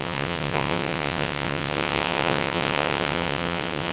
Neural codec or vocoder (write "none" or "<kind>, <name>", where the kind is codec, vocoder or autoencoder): vocoder, WaveNeXt